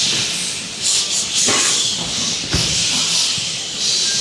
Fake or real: real